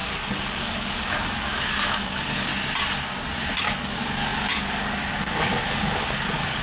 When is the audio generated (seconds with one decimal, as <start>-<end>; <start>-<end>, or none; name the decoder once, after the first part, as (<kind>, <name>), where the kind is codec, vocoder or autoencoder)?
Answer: 0.0-2.5 (codec, DAC); 3.6-6.6